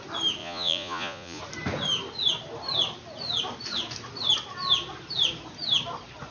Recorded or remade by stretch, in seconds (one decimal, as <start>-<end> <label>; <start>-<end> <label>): 0.0-0.4 recorded; 0.4-1.4 remade; 1.4-6.3 recorded